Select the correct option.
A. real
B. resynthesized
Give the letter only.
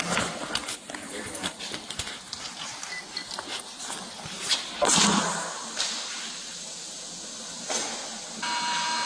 A